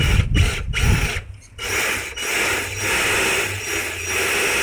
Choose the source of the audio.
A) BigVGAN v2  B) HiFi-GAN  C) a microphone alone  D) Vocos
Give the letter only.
C